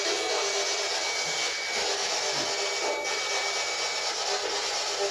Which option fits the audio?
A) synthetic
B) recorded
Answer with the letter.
B